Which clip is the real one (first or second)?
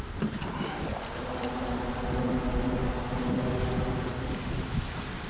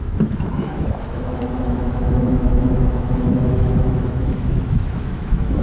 first